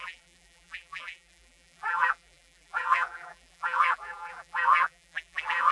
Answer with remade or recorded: remade